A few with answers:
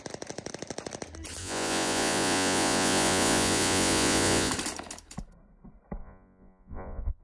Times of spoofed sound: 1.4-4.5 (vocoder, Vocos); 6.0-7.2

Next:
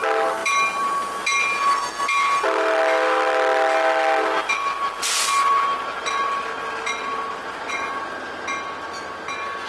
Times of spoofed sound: 7.4-8.1 (vocoder, Vocos)

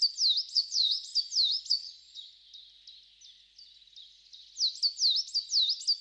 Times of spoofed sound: 0.5-1.1 (vocoder, Vocos); 1.7-2.3

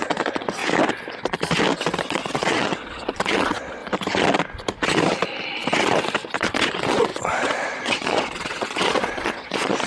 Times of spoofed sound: 0.0-0.6 (vocoder, Vocos); 2.0-3.8; 6.4-9.9

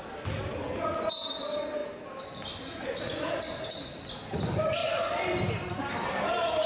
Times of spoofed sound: none

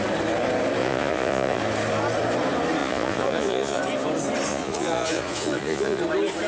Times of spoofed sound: 0.8-1.6 (vocoder, Vocos); 2.8-3.8; 4.5-6.0